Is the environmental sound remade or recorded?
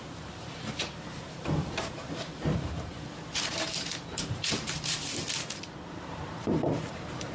remade